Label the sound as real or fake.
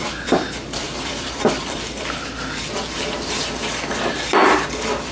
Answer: fake